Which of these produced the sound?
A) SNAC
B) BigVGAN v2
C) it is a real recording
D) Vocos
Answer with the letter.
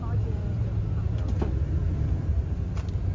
C